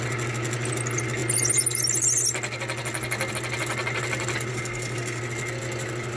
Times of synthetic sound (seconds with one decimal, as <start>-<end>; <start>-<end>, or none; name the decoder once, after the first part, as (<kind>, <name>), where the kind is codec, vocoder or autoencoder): 4.5-5.2 (codec, SNAC)